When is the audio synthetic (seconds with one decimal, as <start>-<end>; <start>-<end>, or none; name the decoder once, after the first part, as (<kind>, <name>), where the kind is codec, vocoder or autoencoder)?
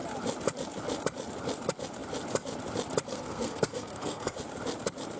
3.1-4.4 (codec, SNAC)